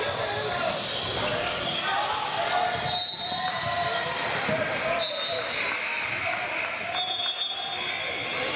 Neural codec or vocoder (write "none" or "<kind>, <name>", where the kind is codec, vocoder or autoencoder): none